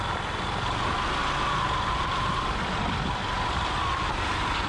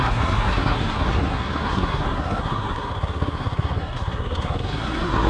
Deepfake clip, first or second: second